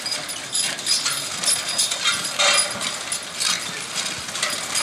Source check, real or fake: real